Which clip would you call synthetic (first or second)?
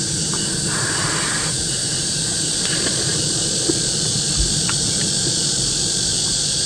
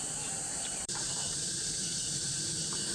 second